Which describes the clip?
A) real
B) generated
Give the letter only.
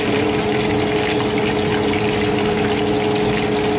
A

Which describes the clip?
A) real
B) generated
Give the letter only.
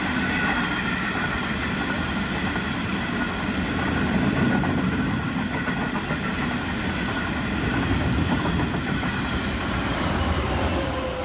A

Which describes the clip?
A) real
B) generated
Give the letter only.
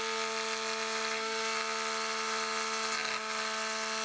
A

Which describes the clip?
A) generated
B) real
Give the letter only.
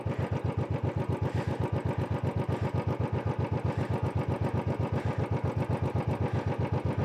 B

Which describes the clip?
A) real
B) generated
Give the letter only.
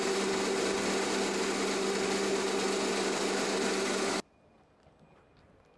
A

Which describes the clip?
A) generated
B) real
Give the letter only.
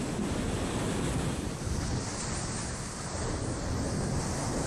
B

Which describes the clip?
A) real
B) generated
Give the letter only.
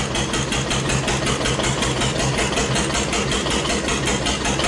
A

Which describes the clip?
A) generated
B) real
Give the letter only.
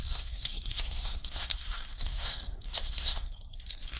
A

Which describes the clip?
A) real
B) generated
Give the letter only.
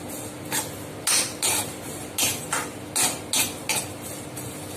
A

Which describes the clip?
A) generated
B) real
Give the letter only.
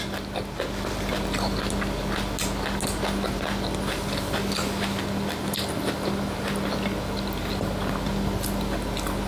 B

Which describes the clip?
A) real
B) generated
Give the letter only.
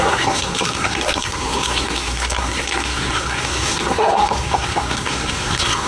B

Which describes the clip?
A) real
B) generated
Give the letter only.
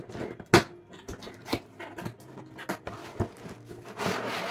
A